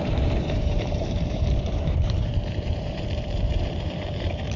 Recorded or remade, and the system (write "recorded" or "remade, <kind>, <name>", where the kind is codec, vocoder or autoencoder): remade, vocoder, BigVGAN v2